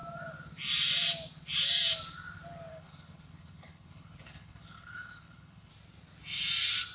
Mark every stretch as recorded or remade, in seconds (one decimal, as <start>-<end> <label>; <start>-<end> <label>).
0.0-2.7 recorded; 2.7-5.7 remade; 5.7-6.9 recorded

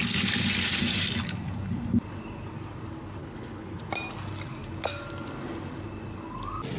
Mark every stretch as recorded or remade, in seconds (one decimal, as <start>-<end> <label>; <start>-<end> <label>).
0.0-3.2 recorded; 3.2-3.8 remade; 3.8-6.8 recorded

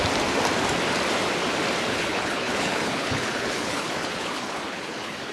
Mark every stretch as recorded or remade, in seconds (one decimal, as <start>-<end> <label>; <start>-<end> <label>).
0.0-1.9 recorded; 1.9-5.3 remade

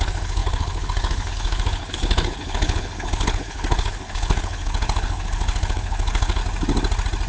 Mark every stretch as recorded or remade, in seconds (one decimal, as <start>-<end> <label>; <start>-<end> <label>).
0.0-6.4 remade; 6.4-7.3 recorded

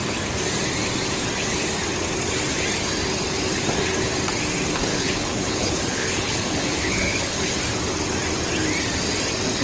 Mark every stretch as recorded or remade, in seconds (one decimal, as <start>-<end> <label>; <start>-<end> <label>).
0.0-4.9 recorded; 4.9-7.6 remade; 7.6-9.6 recorded

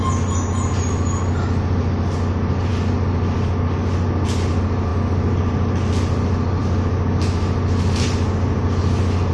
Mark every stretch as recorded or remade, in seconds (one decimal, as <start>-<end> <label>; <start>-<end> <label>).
0.0-9.3 recorded

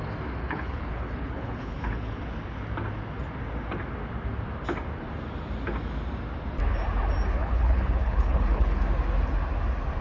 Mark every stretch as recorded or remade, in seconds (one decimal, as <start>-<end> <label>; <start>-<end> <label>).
0.0-0.4 recorded; 0.4-2.2 remade; 2.2-7.4 recorded; 7.4-8.8 remade; 8.8-10.0 recorded